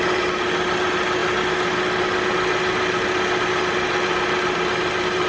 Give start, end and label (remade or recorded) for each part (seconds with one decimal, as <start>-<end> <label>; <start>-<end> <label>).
0.0-5.3 recorded